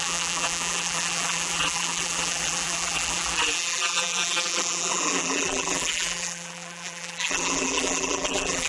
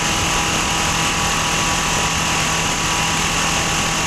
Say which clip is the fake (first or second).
first